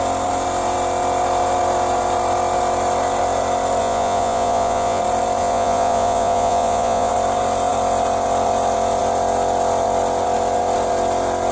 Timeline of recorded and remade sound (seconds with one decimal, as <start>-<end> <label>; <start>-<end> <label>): 0.0-3.8 recorded; 3.8-5.0 remade; 5.0-5.4 recorded; 5.4-7.1 remade; 7.1-11.5 recorded